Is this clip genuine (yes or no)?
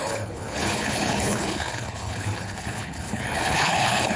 no